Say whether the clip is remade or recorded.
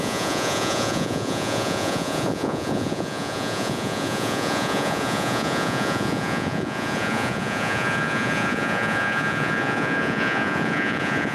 remade